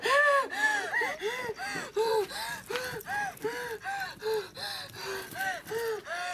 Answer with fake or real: real